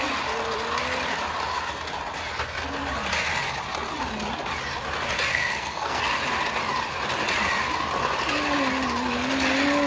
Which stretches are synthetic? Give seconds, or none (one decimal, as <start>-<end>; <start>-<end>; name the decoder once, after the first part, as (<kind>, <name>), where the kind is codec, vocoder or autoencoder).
5.3-6.0 (codec, SNAC)

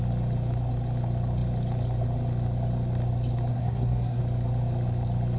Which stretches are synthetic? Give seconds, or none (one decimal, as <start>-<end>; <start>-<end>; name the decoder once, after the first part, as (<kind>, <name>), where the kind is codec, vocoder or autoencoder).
3.5-4.2 (codec, SNAC)

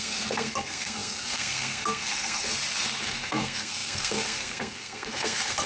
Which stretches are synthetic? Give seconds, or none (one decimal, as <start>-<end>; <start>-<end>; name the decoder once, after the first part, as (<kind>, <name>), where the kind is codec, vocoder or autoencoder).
0.0-2.5 (codec, SNAC); 3.0-5.7

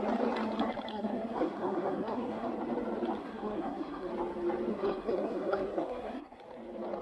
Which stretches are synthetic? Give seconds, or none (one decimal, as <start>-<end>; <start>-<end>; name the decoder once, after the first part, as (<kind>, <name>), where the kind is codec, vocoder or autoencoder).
0.9-2.5 (codec, SNAC); 3.2-4.1; 4.7-6.4

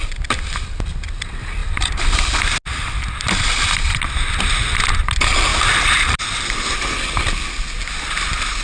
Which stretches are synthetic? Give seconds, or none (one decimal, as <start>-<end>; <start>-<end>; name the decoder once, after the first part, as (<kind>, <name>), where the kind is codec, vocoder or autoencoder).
none

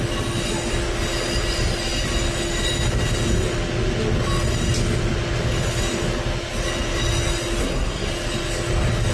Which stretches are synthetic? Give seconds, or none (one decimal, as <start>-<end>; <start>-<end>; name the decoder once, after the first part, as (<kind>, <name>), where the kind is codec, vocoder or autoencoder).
7.6-8.1 (codec, SNAC)

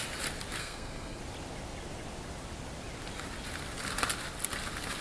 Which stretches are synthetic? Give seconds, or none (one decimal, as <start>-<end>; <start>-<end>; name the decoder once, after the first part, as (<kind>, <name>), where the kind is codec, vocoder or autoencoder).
0.6-1.2 (codec, SNAC)